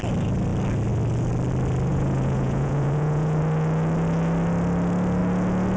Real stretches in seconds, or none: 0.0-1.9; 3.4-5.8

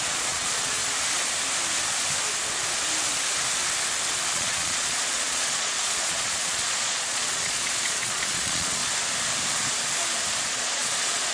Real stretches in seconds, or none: 0.8-4.3; 8.8-10.5

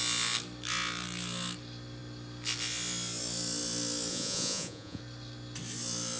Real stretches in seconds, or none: 0.0-4.1; 5.0-6.2

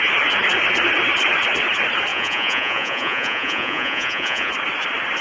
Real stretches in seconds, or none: 0.0-2.1; 4.5-5.2

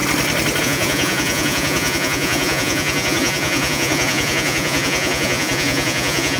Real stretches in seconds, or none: 0.0-0.6

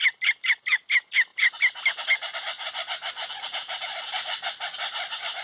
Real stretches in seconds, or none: 0.0-5.4

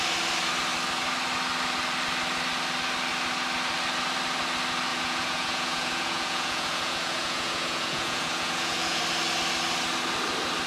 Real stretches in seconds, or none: 0.0-4.9; 9.0-10.7

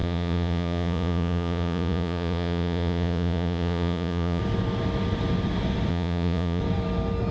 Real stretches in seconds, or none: 4.4-5.9; 6.6-7.3